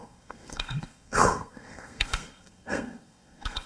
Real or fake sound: fake